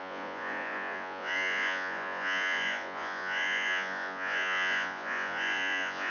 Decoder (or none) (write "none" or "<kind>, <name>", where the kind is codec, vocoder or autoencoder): vocoder, Vocos